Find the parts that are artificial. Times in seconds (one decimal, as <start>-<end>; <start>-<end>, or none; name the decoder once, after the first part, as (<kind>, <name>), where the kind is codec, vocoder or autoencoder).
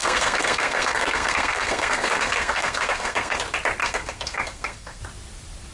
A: 0.0-3.4 (codec, SNAC); 3.8-5.0